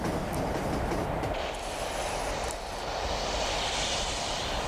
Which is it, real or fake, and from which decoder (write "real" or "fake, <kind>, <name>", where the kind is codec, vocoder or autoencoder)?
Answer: real